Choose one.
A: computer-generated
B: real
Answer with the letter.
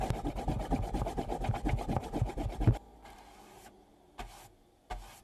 B